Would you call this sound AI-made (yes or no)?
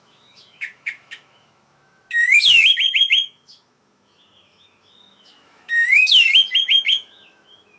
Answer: yes